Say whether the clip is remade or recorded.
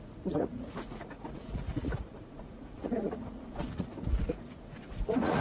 remade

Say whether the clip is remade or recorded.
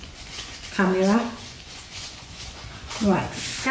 remade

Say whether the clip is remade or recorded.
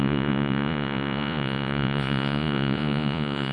remade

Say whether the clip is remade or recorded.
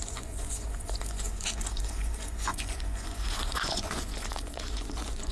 remade